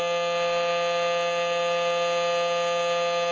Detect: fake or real real